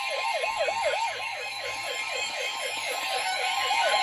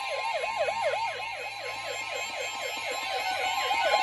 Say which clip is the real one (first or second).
second